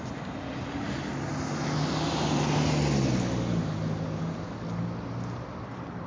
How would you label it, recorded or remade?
recorded